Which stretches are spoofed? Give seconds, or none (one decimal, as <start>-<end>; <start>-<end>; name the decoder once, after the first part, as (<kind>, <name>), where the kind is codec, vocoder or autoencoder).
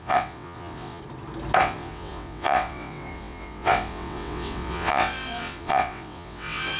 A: 0.0-1.0 (vocoder, WaveNeXt); 1.6-6.8